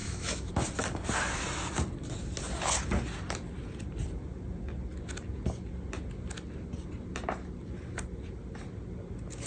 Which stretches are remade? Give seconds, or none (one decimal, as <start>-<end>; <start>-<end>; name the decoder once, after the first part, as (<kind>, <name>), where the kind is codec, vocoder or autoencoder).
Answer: 0.0-0.5 (autoencoder, DAC-VAE)